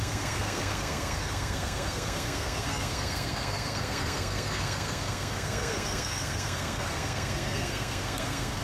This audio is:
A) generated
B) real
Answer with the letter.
A